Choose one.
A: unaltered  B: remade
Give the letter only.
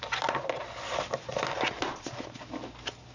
A